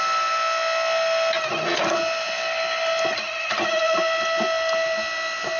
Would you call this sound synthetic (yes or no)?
no